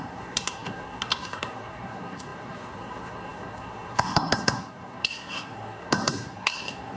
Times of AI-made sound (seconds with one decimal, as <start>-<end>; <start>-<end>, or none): 0.0-7.0